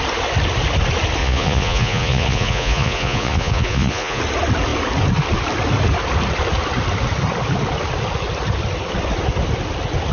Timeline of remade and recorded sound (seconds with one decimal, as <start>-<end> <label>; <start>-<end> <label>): 0.0-1.2 recorded; 1.2-4.2 remade; 4.2-10.1 recorded